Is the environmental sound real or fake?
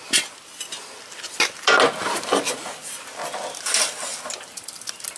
real